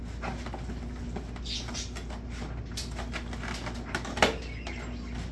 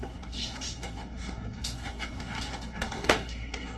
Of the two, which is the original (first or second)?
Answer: first